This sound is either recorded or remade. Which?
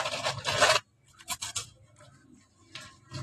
recorded